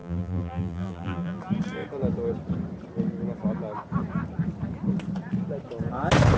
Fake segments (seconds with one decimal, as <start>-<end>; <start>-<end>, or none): 0.0-1.4